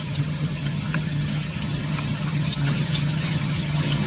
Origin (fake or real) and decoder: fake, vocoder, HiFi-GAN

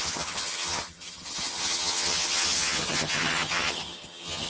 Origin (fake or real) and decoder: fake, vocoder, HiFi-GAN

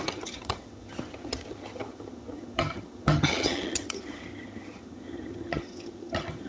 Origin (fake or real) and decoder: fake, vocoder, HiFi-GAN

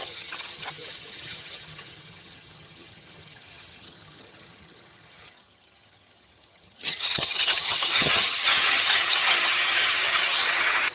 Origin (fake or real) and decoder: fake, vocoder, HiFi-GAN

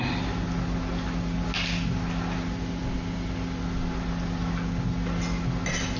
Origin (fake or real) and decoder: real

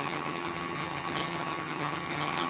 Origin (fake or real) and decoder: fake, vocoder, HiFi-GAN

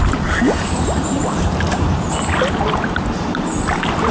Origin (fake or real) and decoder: real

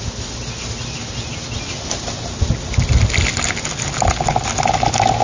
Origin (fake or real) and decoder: real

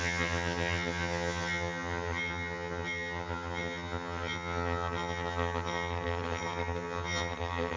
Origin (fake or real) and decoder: fake, vocoder, HiFi-GAN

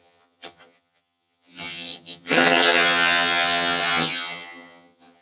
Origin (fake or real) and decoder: fake, vocoder, HiFi-GAN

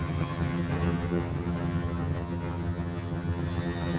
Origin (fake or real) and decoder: fake, vocoder, HiFi-GAN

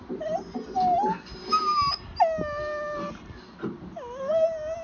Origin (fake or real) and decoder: real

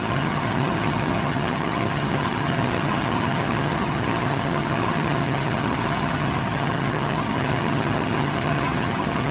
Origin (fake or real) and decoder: fake, vocoder, HiFi-GAN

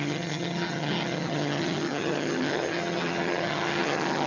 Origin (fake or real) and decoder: fake, vocoder, HiFi-GAN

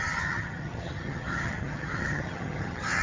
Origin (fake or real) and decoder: fake, vocoder, HiFi-GAN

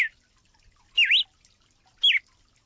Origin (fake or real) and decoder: real